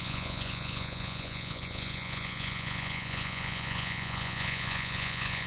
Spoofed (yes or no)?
yes